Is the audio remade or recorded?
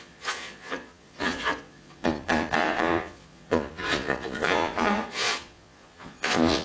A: remade